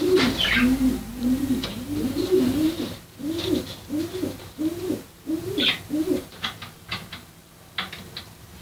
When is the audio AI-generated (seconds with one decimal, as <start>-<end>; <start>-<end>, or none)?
0.0-7.4; 8.2-8.6